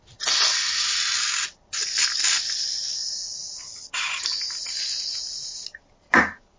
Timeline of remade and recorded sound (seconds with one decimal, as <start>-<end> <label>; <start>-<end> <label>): 0.0-6.6 recorded